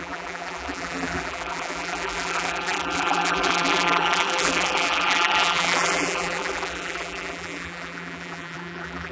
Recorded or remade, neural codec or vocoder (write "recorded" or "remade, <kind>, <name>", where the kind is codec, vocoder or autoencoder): remade, vocoder, BigVGAN v2